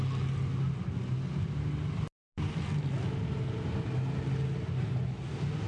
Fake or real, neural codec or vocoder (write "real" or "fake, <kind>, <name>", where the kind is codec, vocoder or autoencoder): real